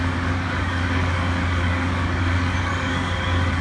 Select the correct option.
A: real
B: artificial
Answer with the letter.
B